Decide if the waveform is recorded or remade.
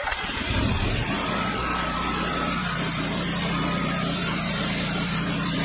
remade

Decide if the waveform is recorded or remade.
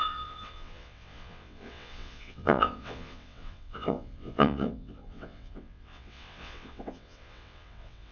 remade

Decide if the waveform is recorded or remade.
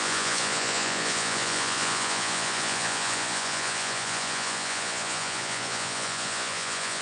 remade